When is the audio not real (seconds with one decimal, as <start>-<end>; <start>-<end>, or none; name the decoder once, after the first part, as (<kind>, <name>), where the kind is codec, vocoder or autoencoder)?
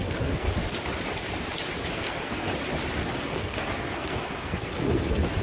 0.0-0.5 (codec, SNAC); 1.9-2.5; 3.1-5.4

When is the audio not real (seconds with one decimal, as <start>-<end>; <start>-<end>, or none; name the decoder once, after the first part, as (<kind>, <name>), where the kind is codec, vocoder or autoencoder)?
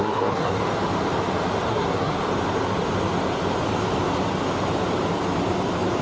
0.0-0.6 (codec, SNAC); 1.7-2.2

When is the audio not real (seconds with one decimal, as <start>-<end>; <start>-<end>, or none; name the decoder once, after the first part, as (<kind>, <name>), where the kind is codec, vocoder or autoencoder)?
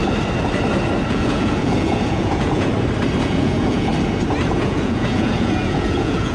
1.1-2.7 (vocoder, Vocos); 3.2-3.9; 4.5-6.3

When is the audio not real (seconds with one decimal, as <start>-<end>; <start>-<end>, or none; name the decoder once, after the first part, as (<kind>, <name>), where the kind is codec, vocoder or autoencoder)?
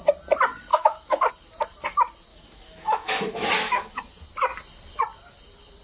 0.7-1.3 (autoencoder, DAC-VAE); 2.3-4.0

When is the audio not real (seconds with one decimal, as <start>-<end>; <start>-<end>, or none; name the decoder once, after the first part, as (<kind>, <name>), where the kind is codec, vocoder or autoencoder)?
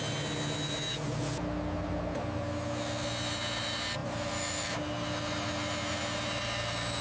none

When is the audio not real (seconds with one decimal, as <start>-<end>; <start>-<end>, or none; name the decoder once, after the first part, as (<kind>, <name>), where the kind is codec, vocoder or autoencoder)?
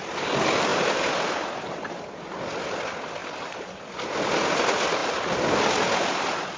0.7-2.0 (vocoder, BigVGAN v2); 3.2-3.8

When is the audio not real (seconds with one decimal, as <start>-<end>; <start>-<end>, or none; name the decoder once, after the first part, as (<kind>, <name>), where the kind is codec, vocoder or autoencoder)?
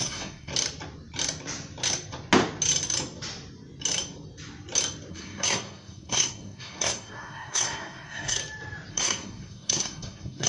0.0-0.5 (codec, SNAC); 5.1-8.4; 8.9-10.5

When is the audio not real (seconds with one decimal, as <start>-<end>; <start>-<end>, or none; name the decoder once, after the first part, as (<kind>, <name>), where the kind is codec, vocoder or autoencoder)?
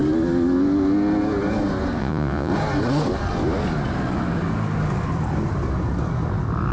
2.0-2.5 (vocoder, Vocos)